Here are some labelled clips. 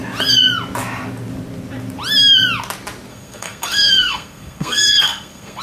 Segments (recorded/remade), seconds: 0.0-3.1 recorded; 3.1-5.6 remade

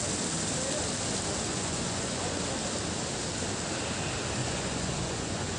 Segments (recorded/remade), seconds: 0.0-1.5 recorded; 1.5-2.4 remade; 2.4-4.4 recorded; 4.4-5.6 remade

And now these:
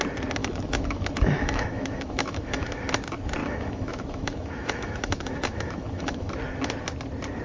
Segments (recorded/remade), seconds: 0.0-0.4 recorded; 0.4-2.8 remade; 2.8-3.4 recorded; 3.4-6.3 remade; 6.3-7.4 recorded

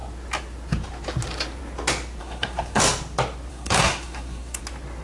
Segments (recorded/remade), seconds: 0.0-2.2 recorded; 2.2-2.8 remade; 2.8-3.5 recorded; 3.5-4.6 remade; 4.6-5.0 recorded

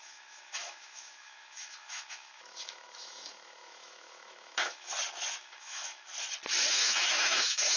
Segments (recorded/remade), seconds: 0.0-4.9 remade; 4.9-5.4 recorded; 5.4-6.1 remade; 6.1-6.7 recorded; 6.7-7.8 remade

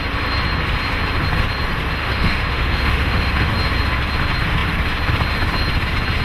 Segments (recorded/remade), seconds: 0.0-2.0 recorded; 2.0-3.5 remade; 3.5-6.2 recorded

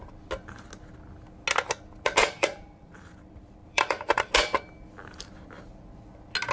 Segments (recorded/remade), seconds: 0.0-2.2 recorded; 2.2-4.3 remade; 4.3-6.5 recorded

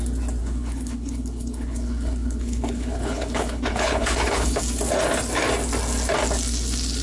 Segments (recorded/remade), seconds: 0.0-0.4 recorded; 0.4-4.6 remade; 4.6-7.0 recorded